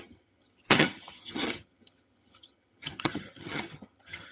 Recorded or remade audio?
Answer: remade